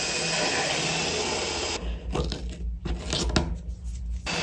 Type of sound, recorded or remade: recorded